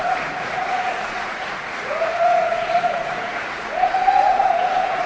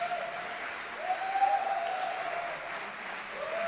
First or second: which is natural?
second